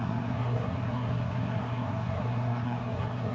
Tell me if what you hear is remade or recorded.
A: remade